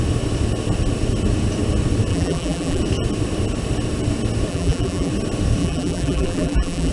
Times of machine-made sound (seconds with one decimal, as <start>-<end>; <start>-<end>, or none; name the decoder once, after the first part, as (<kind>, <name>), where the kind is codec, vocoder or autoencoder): 2.1-2.8 (vocoder, BigVGAN v2); 4.5-5.1; 5.6-6.9